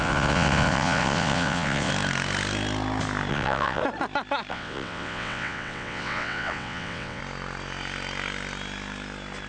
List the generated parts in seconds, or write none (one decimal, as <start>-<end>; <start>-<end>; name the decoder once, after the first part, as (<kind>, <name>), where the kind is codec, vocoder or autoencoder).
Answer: 0.0-1.9 (vocoder, WaveNeXt); 3.3-3.8; 4.5-7.2